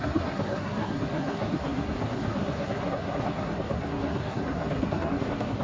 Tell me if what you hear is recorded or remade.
remade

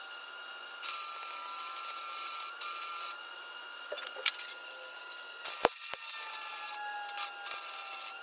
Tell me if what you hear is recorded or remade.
recorded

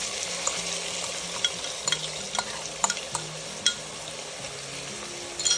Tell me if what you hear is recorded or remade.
recorded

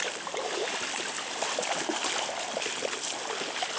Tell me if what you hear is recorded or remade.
recorded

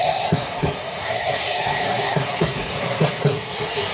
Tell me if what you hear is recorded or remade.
remade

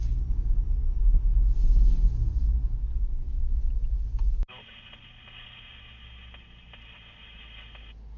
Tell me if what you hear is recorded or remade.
recorded